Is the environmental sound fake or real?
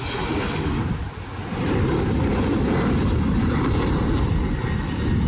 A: real